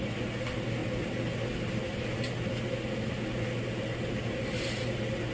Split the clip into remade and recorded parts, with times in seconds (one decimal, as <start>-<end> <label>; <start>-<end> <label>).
0.0-5.3 recorded